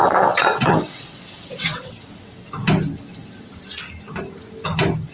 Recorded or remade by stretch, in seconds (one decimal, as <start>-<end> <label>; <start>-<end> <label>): 0.0-2.5 remade; 2.5-5.1 recorded